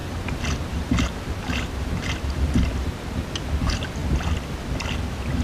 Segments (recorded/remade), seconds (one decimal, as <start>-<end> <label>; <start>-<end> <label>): 0.0-5.4 recorded